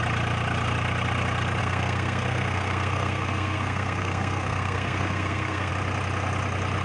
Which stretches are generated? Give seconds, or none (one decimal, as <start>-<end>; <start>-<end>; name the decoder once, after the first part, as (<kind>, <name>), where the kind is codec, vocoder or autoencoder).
1.6-5.7 (codec, SNAC)